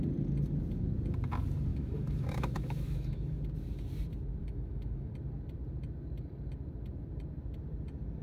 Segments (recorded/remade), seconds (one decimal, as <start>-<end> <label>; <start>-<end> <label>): 0.0-1.7 recorded; 1.7-3.4 remade; 3.4-4.4 recorded; 4.4-5.1 remade; 5.1-8.2 recorded